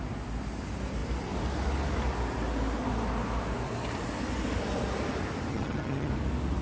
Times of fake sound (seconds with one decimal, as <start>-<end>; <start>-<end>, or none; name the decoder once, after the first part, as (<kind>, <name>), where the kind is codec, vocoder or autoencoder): 5.5-6.1 (vocoder, HiFi-GAN)